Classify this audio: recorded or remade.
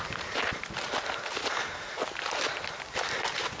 recorded